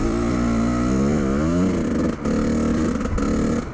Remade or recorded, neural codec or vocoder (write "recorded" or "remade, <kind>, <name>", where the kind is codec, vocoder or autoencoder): remade, vocoder, BigVGAN v2